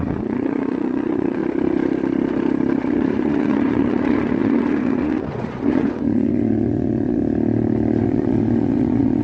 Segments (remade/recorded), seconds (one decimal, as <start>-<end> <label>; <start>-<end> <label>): 0.0-1.4 remade; 1.4-2.8 recorded; 2.8-7.2 remade; 7.2-8.0 recorded; 8.0-9.2 remade